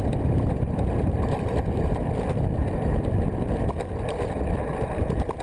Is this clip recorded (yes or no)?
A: yes